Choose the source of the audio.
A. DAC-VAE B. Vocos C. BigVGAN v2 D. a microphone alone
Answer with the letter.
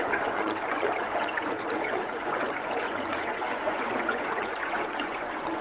B